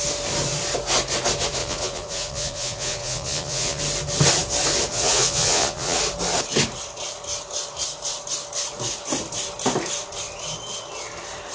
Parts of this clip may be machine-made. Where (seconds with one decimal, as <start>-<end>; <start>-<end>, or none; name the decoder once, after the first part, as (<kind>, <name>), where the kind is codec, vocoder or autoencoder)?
1.6-3.8 (vocoder, Vocos); 4.9-6.0

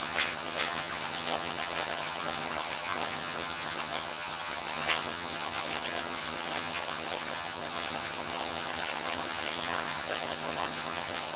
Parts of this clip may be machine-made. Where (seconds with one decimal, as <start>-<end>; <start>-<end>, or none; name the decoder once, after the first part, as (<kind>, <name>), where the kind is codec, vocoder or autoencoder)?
0.0-11.4 (vocoder, HiFi-GAN)